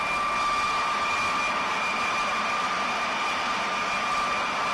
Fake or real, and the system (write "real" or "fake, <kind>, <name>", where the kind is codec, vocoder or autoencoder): real